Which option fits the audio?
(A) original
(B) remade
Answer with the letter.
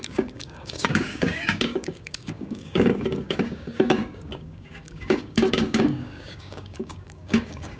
B